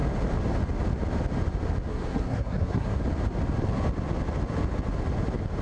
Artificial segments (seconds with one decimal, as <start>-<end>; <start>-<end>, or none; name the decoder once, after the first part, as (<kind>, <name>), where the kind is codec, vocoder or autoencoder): 1.9-3.0 (codec, SNAC)